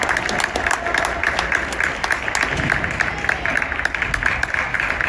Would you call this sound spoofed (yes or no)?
no